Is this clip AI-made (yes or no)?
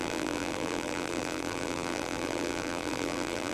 yes